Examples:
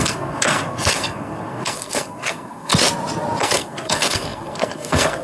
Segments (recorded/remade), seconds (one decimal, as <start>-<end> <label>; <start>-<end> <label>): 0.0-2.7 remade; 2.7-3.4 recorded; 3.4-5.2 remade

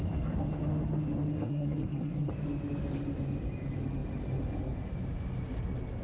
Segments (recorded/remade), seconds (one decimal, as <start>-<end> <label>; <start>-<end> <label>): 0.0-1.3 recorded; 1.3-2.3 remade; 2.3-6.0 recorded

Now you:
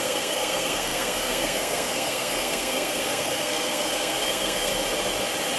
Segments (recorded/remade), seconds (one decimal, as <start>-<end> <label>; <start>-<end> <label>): 0.0-4.7 remade; 4.7-5.6 recorded